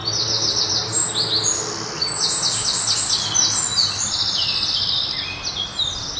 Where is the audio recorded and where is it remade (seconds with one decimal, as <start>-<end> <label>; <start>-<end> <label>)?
0.0-0.6 recorded; 0.6-1.0 remade; 1.0-4.7 recorded; 4.7-5.4 remade; 5.4-6.2 recorded